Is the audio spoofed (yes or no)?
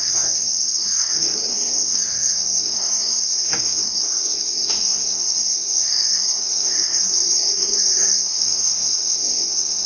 yes